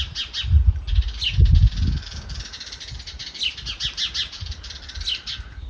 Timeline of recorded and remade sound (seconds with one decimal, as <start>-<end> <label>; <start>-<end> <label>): 0.0-5.7 recorded